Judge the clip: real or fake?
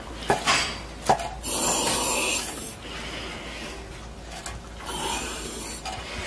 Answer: real